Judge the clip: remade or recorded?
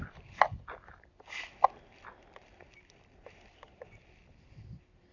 recorded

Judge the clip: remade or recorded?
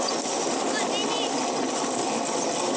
recorded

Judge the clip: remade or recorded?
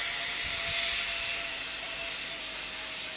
recorded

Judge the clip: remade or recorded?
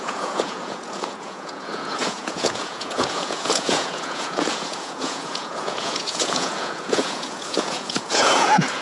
remade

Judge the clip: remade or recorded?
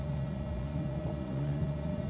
remade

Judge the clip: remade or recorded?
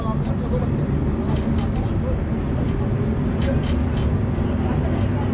recorded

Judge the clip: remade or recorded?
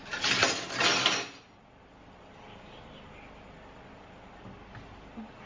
recorded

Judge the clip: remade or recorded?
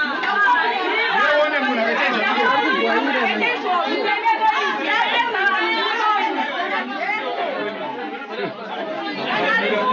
recorded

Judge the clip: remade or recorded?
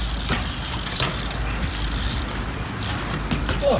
recorded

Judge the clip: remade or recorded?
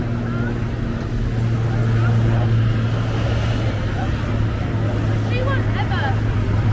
recorded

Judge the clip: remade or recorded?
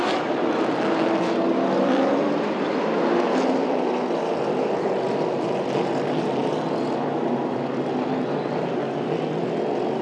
recorded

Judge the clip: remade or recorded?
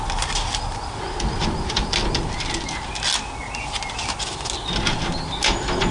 recorded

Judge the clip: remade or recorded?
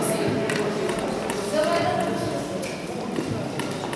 recorded